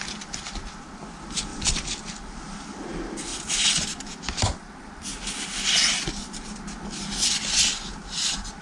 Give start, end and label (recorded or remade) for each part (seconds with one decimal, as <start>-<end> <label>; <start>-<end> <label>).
0.0-3.3 remade; 3.3-7.3 recorded; 7.3-8.6 remade